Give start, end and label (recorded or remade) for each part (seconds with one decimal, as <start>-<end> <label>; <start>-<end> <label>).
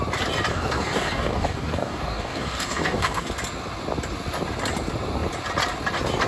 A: 0.0-0.5 recorded; 0.5-3.3 remade; 3.3-6.3 recorded